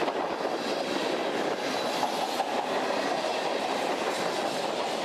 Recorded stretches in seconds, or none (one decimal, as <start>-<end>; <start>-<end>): 1.2-2.6